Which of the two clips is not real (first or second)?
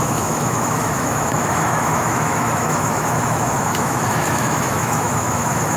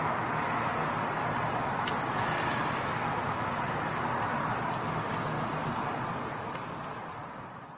first